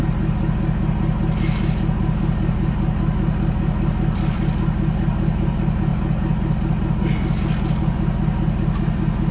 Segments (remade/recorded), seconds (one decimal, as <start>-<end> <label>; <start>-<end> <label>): 0.0-2.5 recorded; 2.5-5.9 remade; 5.9-7.8 recorded; 7.8-9.3 remade